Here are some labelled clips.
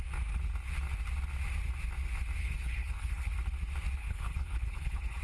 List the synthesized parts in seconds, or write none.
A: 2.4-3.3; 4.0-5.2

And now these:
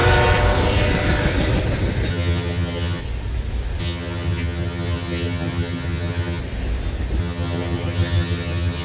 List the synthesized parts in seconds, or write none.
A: 2.1-3.0; 3.8-6.4; 7.2-8.8

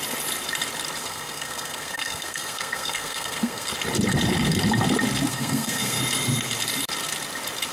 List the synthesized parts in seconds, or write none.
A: 1.0-3.7; 5.3-6.0